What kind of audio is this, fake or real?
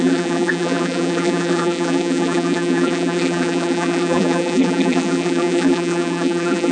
fake